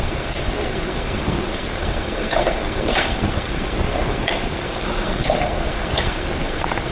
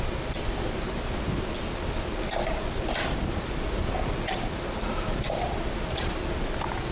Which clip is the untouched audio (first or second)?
second